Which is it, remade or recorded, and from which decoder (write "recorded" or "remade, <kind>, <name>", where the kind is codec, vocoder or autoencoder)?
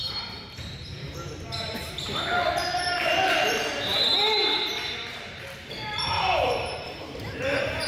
remade, vocoder, BigVGAN v2